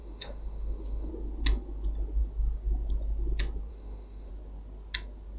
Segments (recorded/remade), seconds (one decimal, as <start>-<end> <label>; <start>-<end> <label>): 0.0-1.1 remade; 1.1-3.7 recorded; 3.7-4.3 remade; 4.3-5.4 recorded